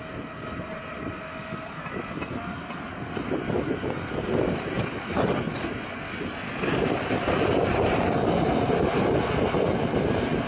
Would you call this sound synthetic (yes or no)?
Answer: no